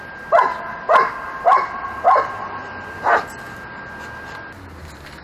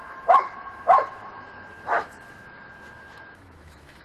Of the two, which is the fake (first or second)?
second